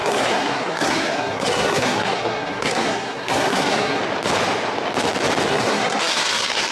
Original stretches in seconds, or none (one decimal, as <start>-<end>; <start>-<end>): 4.0-5.5